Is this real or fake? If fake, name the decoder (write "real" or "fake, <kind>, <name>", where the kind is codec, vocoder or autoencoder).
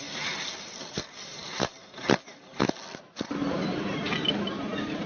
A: real